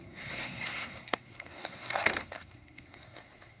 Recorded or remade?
remade